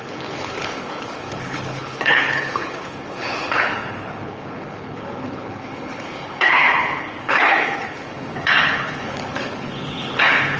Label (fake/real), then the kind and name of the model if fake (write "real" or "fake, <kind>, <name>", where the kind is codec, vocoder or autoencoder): fake, codec, HILCodec